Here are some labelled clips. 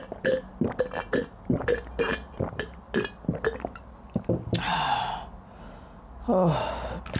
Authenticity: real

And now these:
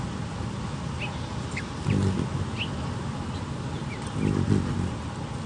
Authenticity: real